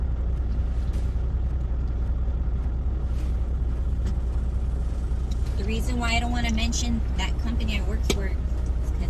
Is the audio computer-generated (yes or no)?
no